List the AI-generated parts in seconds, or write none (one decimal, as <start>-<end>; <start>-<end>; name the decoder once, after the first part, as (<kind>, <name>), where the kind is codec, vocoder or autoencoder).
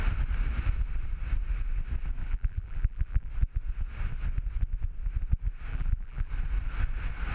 2.2-3.3 (vocoder, BigVGAN v2); 5.7-6.3